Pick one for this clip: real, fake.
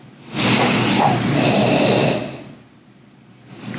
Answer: real